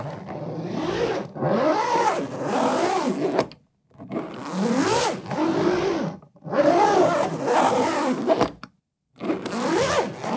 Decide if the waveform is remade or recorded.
recorded